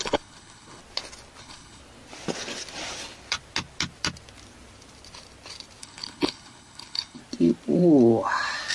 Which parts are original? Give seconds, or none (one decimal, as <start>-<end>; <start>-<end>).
0.8-1.4; 1.8-5.8; 7.2-8.7